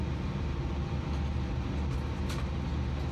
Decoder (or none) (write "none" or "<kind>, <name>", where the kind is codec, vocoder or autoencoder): none